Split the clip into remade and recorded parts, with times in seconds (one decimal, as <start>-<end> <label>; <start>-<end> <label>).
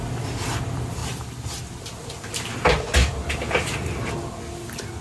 0.0-5.0 recorded